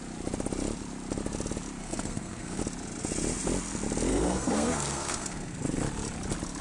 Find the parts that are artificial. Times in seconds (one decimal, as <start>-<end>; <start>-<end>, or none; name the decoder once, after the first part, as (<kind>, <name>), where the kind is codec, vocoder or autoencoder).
1.8-2.6 (codec, SNAC); 4.1-5.6